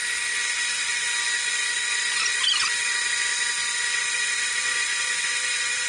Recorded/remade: recorded